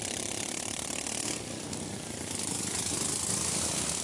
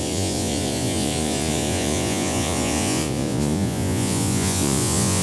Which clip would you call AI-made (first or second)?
second